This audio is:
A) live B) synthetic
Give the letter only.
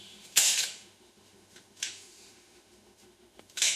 B